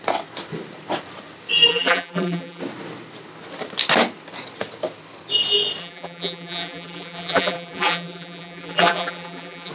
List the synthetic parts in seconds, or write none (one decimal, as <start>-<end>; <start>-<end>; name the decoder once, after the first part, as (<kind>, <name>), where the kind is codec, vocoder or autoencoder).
1.7-2.6 (vocoder, BigVGAN v2); 5.8-9.7